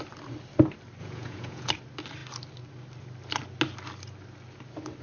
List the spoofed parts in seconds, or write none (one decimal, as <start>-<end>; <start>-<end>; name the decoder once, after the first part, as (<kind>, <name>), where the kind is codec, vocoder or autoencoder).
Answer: 1.0-1.7 (vocoder, Vocos)